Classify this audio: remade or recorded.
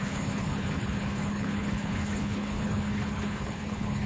remade